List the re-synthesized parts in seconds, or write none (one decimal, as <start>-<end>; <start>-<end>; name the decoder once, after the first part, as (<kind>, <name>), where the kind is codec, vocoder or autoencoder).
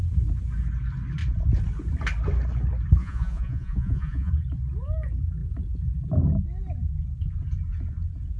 3.0-4.3 (vocoder, Vocos)